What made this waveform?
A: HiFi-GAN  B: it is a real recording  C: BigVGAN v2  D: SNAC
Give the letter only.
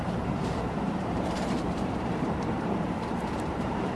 C